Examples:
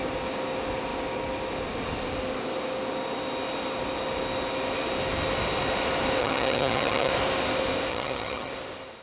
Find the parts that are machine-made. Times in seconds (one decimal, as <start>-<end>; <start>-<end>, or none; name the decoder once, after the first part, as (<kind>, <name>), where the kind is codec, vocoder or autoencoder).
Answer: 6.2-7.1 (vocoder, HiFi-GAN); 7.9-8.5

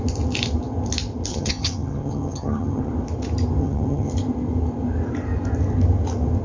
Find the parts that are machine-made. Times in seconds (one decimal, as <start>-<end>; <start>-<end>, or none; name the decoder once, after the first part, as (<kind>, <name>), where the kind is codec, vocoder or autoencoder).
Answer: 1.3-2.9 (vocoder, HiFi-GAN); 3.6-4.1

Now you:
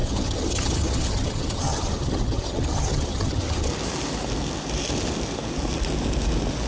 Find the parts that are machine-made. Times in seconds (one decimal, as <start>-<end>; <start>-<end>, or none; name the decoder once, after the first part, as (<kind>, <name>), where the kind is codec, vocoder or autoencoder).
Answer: 0.0-3.7 (vocoder, HiFi-GAN)

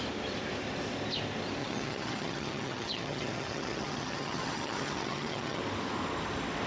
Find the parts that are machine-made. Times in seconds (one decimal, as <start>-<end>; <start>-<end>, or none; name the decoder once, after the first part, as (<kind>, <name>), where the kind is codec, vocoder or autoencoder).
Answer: 1.6-5.6 (vocoder, HiFi-GAN)